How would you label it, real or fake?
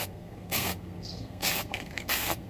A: fake